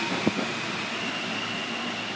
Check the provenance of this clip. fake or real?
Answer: real